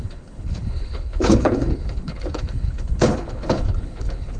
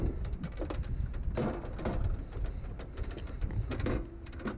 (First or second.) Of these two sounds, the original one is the second